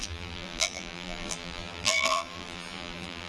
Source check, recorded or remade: remade